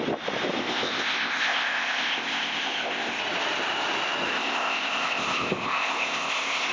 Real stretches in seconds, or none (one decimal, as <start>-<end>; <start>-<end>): 0.0-0.6; 3.2-4.3

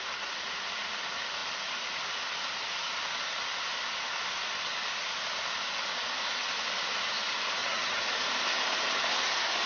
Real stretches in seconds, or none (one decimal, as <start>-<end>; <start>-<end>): 0.0-7.6; 8.1-9.7